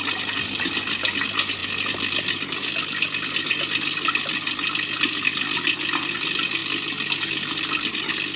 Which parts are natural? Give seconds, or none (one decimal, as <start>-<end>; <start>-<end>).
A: 0.0-8.4